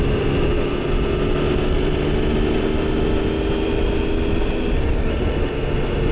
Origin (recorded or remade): recorded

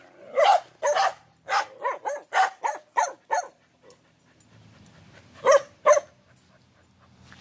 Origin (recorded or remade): recorded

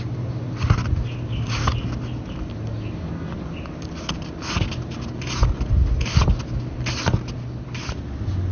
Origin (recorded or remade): recorded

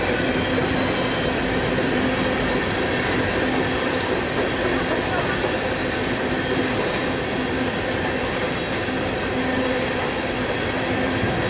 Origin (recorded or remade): recorded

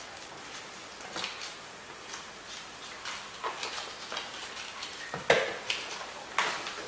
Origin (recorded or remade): recorded